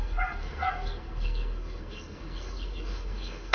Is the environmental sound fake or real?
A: fake